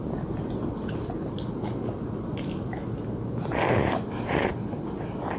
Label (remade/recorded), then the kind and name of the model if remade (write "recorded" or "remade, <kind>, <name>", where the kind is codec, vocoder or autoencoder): recorded